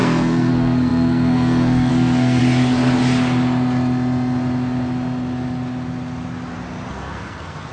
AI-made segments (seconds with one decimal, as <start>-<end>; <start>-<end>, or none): 0.0-2.4; 6.9-7.7